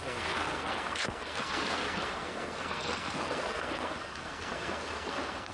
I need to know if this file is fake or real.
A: fake